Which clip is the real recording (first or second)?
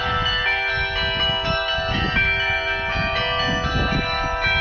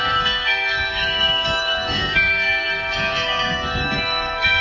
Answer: first